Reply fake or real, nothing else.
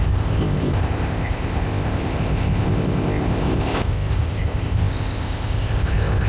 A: fake